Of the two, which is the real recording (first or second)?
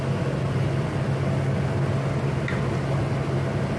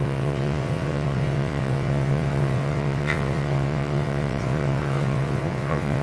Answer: first